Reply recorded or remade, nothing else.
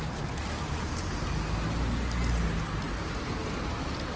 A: recorded